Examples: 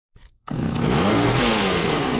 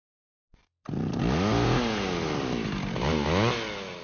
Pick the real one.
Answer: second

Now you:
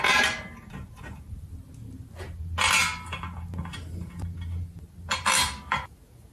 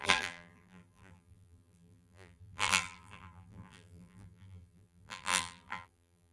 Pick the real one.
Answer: first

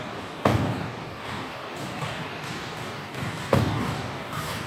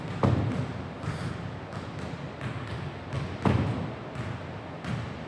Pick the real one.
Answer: second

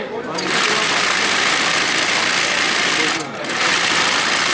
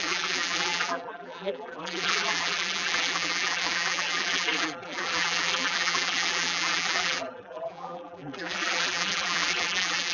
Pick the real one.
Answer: first